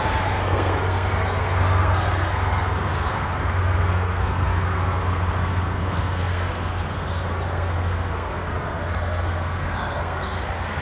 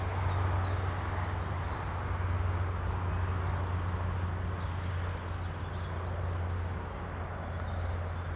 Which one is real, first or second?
second